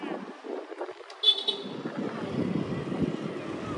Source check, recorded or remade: recorded